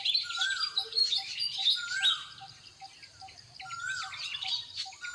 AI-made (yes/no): no